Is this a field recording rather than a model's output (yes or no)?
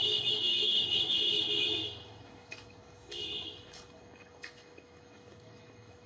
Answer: no